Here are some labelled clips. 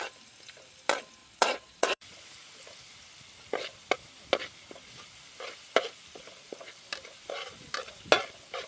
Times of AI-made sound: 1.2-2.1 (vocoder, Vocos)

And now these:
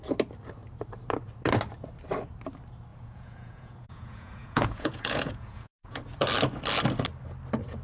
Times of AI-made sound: 2.9-6.0 (vocoder, Vocos)